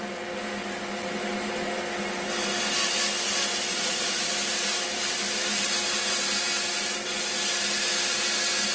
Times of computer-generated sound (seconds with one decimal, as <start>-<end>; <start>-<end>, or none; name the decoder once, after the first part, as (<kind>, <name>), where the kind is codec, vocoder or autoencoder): 3.7-4.3 (vocoder, Vocos)